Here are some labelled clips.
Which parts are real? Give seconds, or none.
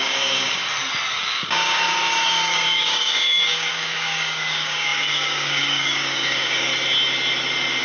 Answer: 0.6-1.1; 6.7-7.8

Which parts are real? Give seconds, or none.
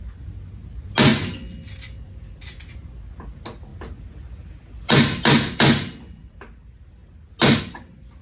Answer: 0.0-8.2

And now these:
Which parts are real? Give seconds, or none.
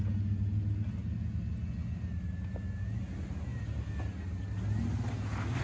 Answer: 0.0-5.6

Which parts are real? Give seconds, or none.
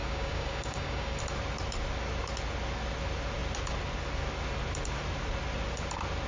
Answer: 1.2-6.3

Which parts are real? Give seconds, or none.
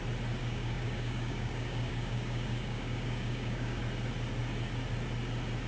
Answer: 0.0-0.4; 3.8-5.7